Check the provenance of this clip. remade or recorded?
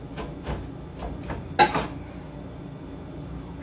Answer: recorded